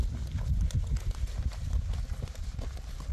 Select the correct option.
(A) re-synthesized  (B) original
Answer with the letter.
B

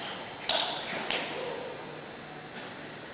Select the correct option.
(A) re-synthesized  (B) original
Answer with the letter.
B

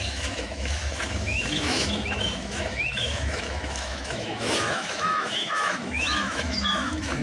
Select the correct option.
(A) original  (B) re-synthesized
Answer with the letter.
B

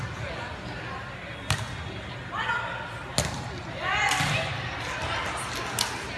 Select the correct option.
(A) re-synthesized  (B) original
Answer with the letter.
B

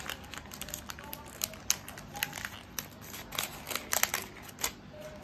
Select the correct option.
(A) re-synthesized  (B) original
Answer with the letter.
B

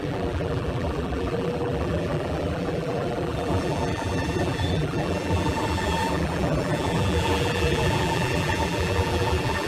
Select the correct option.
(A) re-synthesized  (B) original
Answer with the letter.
A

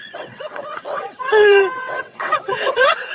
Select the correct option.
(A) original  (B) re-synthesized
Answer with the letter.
B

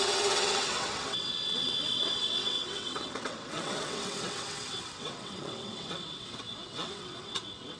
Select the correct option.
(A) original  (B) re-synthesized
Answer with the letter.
B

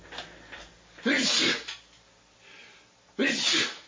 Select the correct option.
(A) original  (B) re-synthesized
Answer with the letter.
A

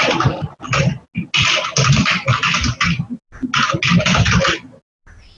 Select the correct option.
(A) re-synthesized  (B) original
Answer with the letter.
B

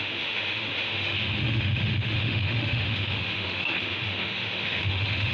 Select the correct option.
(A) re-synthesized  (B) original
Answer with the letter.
A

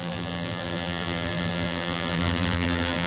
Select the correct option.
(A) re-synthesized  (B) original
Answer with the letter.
A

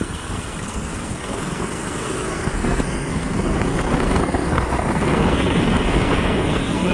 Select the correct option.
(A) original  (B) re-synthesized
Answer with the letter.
B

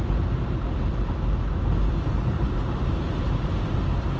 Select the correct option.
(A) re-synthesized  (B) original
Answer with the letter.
B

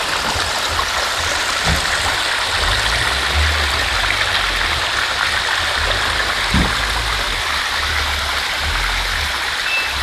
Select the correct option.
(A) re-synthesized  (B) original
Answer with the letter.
B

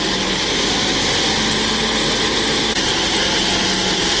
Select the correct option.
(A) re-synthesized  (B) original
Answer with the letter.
B